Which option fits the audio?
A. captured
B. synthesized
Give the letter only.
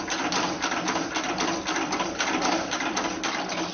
B